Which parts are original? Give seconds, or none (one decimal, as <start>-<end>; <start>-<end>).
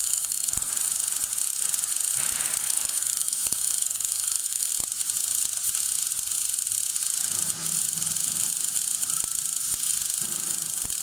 0.7-2.6; 4.7-11.0